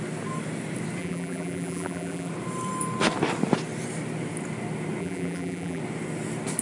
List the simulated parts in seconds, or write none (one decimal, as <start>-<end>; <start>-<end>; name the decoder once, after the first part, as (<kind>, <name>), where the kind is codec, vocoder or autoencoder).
1.0-2.3 (vocoder, BigVGAN v2); 5.0-5.8

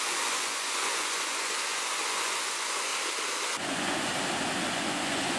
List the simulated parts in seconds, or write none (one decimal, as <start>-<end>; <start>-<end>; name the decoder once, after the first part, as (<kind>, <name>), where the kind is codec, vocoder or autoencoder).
0.0-2.9 (vocoder, Vocos); 3.6-4.1; 4.7-5.4

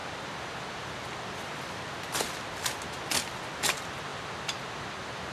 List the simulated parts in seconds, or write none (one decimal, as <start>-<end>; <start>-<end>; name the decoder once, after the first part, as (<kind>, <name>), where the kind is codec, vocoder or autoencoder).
none

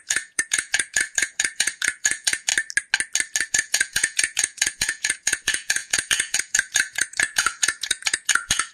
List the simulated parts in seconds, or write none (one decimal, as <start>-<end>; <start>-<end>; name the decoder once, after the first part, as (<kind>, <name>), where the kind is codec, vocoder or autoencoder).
0.0-2.5 (vocoder, Vocos); 3.5-8.7

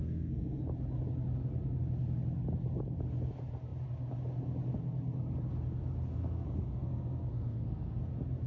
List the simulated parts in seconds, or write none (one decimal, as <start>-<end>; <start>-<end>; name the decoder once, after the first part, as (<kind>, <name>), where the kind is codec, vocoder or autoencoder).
0.0-0.6 (codec, SNAC); 6.1-8.0

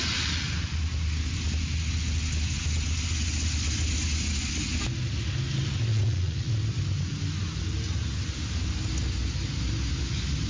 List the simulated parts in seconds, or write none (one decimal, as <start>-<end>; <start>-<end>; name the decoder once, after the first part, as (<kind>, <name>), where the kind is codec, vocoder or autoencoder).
5.9-6.5 (vocoder, Vocos)

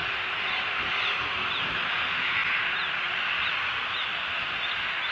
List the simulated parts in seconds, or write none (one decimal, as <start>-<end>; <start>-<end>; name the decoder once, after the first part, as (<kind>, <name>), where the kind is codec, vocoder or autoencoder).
none